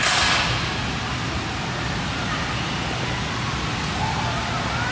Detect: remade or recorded recorded